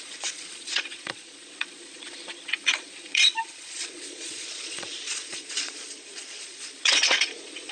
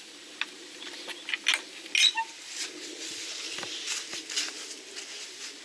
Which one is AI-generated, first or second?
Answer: first